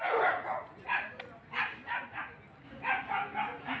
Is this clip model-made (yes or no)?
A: no